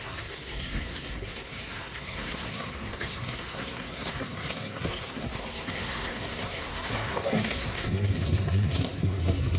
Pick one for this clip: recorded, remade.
remade